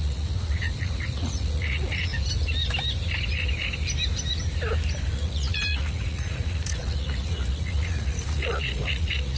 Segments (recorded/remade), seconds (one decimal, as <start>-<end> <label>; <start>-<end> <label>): 0.0-2.1 remade; 2.1-5.1 recorded; 5.1-9.4 remade